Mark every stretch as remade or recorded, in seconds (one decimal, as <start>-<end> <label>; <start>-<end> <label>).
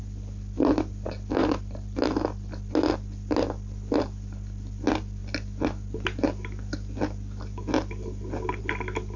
0.0-9.2 recorded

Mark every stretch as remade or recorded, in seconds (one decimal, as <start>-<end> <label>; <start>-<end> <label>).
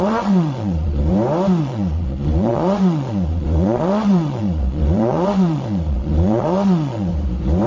0.0-1.1 remade; 1.1-1.6 recorded; 1.6-7.1 remade; 7.1-7.7 recorded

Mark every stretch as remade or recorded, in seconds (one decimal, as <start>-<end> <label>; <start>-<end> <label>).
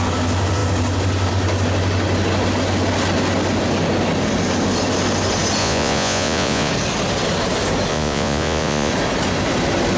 0.0-5.6 recorded; 5.6-6.7 remade; 6.7-7.9 recorded; 7.9-8.9 remade; 8.9-10.0 recorded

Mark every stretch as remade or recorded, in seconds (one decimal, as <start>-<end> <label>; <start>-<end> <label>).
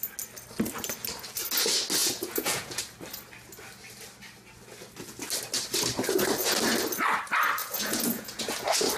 0.0-2.0 recorded; 2.0-2.8 remade; 2.8-7.6 recorded; 7.6-8.4 remade; 8.4-9.0 recorded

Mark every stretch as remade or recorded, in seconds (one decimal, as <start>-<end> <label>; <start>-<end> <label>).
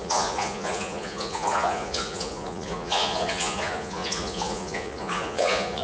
0.0-5.8 remade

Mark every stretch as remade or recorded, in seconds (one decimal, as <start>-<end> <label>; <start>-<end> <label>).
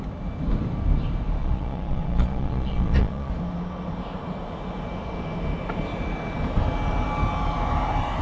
0.0-1.4 recorded; 1.4-3.3 remade; 3.3-8.2 recorded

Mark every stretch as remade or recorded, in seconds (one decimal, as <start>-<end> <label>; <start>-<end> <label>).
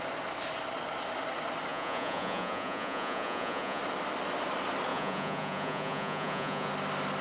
0.0-1.7 recorded; 1.7-3.8 remade; 3.8-4.9 recorded; 4.9-6.7 remade; 6.7-7.2 recorded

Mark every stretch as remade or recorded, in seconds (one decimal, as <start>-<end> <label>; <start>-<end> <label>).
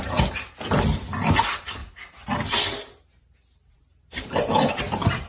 0.0-5.3 recorded